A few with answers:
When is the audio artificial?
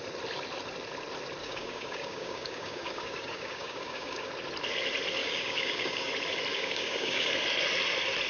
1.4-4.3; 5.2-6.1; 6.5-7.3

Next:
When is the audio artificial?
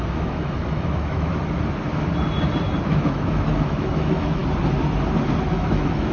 0.0-1.3; 2.8-4.4; 5.4-6.1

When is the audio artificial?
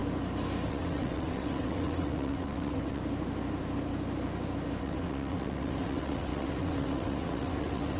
0.7-3.0; 4.8-8.0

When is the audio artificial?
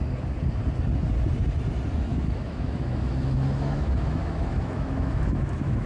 2.1-5.9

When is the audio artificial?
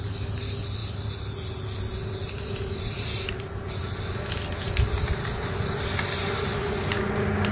none